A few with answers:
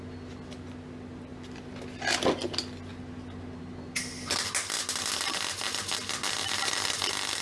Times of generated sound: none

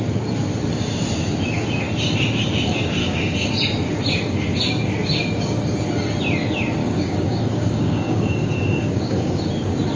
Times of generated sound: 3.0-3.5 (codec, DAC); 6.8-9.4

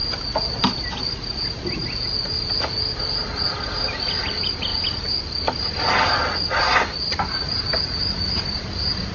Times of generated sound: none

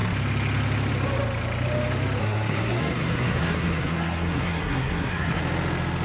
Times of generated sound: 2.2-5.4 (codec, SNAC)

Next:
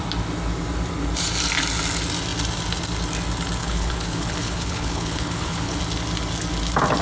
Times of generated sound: 3.6-5.8 (codec, HILCodec)